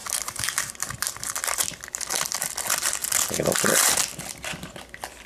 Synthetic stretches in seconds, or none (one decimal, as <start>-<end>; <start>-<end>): none